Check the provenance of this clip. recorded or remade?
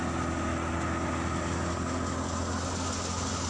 recorded